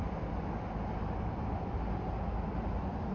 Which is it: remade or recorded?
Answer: recorded